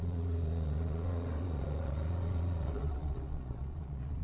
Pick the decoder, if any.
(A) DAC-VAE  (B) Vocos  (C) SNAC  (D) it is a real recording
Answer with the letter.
B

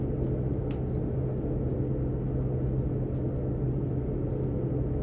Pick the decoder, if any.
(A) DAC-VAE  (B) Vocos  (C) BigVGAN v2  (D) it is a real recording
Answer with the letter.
D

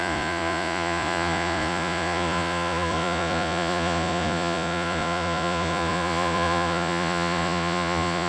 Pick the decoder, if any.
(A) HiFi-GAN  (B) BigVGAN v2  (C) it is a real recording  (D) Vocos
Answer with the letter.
D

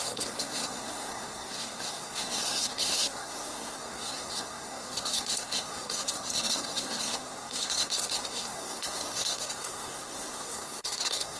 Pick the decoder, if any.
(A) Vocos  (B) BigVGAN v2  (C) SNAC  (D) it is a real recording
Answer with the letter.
C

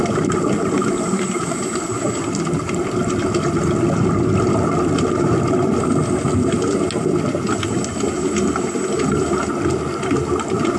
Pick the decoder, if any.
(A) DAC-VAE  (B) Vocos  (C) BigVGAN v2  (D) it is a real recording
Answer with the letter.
D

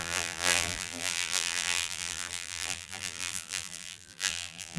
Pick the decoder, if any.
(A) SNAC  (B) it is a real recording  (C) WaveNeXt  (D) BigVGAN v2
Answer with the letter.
D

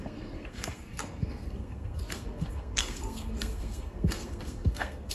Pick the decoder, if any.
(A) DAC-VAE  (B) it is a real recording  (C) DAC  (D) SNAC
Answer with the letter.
D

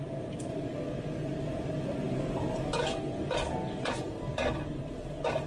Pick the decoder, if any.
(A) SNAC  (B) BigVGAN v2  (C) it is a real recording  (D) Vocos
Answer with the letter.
C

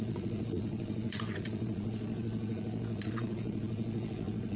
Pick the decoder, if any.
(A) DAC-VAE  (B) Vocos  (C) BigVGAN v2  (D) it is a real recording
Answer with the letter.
B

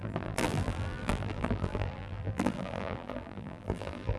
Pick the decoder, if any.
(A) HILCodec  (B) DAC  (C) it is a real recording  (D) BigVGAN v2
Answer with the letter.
D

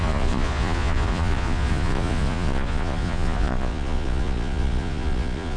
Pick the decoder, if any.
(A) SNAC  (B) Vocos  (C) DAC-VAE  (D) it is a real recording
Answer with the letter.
B